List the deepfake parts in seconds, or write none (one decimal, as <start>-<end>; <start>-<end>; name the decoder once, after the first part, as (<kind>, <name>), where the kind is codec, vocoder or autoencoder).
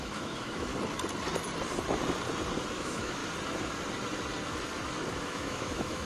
0.0-0.7 (autoencoder, DAC-VAE); 2.7-3.2; 5.2-6.0